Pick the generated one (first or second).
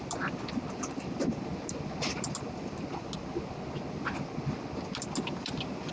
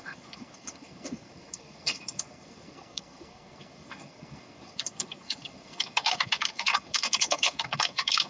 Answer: second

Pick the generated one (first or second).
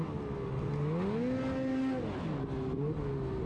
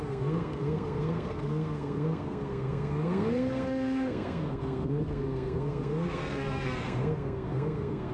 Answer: second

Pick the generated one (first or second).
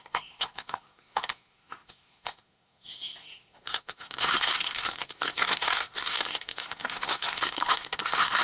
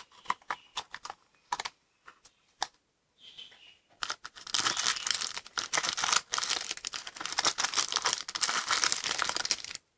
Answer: first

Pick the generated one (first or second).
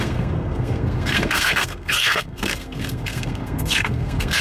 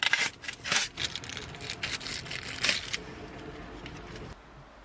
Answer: first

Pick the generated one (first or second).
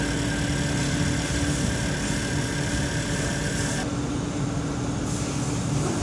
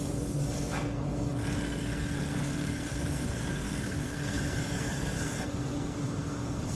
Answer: second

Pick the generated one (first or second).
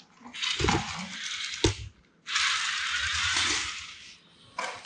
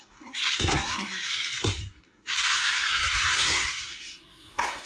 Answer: second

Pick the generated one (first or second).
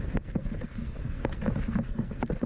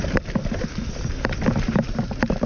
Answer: first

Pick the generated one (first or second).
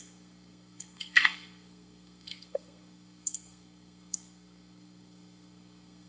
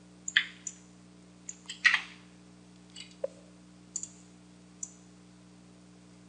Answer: first